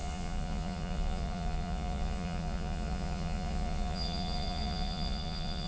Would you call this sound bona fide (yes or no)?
no